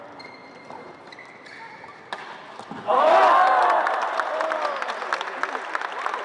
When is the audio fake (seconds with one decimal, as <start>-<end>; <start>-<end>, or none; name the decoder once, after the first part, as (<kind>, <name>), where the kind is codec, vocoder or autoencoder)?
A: none